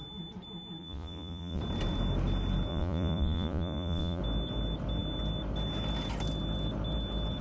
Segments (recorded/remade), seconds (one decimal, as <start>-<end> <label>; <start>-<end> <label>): 0.0-0.8 recorded; 0.8-1.6 remade; 1.6-2.7 recorded; 2.7-4.2 remade; 4.2-7.4 recorded